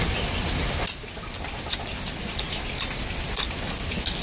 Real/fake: real